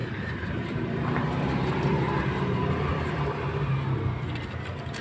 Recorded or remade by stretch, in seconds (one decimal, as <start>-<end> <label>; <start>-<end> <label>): 0.0-2.2 remade; 2.2-2.9 recorded; 2.9-4.0 remade; 4.0-5.0 recorded